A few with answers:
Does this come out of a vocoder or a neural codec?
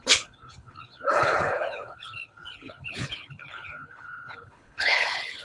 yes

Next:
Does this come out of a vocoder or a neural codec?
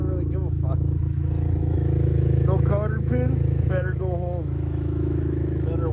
yes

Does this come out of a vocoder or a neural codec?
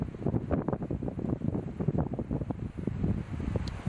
yes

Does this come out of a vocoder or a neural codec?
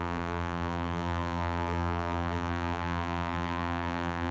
yes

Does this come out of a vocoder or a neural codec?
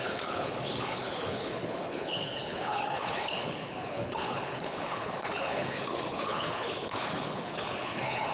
yes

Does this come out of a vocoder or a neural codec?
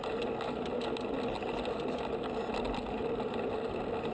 no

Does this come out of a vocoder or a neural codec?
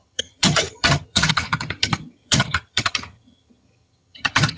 yes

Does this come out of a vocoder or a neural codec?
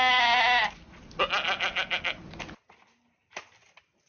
no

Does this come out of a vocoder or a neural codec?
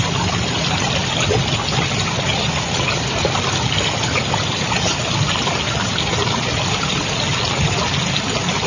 no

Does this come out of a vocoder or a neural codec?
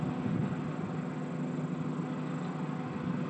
no